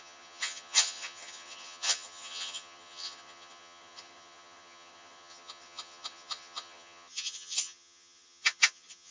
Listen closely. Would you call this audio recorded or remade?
remade